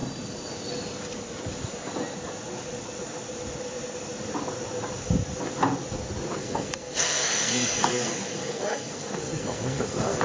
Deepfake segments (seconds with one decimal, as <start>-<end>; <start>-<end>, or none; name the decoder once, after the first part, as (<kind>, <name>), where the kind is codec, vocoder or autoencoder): 6.4-10.2 (codec, SNAC)